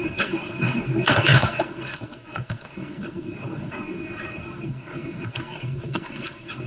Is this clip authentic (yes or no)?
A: no